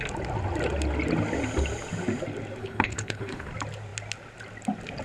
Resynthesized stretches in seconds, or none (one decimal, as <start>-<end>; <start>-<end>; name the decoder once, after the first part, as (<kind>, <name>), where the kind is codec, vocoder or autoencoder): 2.6-3.5 (codec, HILCodec)